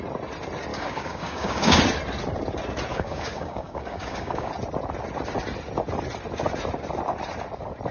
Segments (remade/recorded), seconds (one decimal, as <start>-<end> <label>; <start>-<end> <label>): 0.0-0.7 recorded; 0.7-1.8 remade; 1.8-2.9 recorded; 2.9-4.5 remade; 4.5-7.9 recorded